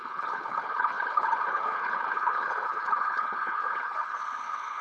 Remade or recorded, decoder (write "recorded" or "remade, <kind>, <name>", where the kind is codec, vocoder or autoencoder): remade, codec, HILCodec